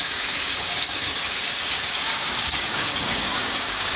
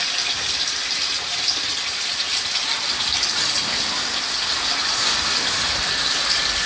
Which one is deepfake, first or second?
first